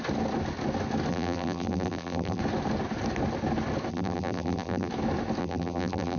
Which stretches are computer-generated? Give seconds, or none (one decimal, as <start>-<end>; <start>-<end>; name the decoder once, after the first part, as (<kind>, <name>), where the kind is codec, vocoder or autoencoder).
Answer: 1.1-2.4 (vocoder, BigVGAN v2); 3.9-4.9; 5.4-6.2